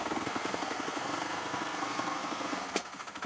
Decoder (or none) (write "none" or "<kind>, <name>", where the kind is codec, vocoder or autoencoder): codec, SNAC